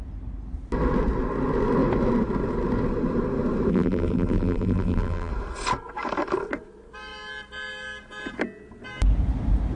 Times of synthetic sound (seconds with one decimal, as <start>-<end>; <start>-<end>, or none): 3.7-5.3